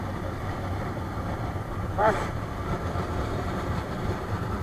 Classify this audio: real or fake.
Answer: fake